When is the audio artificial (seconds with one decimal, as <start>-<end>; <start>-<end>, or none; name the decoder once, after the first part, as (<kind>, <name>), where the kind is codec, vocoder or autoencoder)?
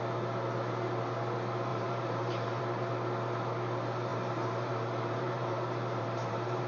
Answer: 1.7-2.6 (vocoder, BigVGAN v2); 4.1-6.7